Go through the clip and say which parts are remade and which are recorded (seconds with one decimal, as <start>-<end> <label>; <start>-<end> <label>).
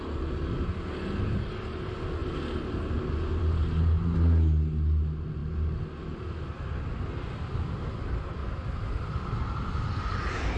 0.0-8.4 recorded; 8.4-9.8 remade; 9.8-10.6 recorded